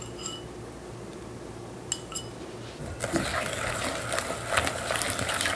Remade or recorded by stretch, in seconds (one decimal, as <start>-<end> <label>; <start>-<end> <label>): 0.0-5.6 recorded

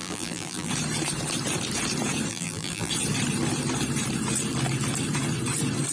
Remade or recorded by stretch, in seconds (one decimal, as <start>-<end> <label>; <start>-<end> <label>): 0.0-0.7 remade; 0.7-2.3 recorded; 2.3-2.9 remade; 2.9-5.9 recorded

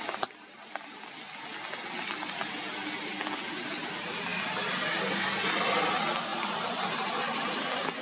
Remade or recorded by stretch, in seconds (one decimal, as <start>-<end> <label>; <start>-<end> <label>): 0.0-8.0 recorded

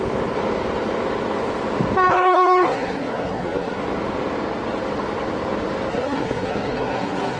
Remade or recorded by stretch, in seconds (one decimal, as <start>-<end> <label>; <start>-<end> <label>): 0.0-2.1 recorded; 2.1-3.8 remade; 3.8-5.9 recorded; 5.9-7.4 remade